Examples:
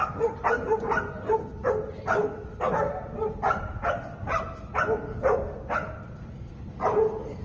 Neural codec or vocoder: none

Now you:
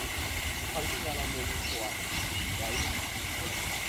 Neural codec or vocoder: none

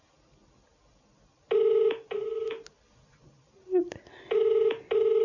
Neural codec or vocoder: none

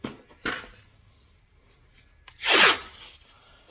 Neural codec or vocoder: none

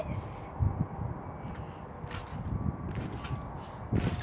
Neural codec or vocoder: none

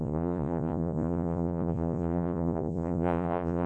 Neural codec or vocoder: vocoder, Vocos